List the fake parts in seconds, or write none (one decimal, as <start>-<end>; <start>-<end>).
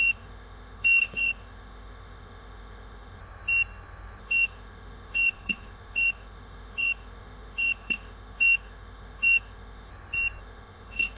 0.0-3.2; 4.2-9.9; 10.4-11.2